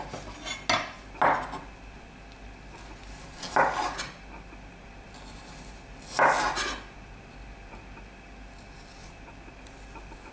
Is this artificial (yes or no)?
no